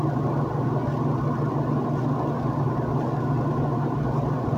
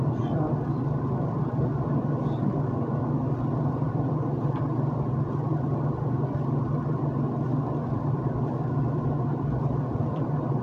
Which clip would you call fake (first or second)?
second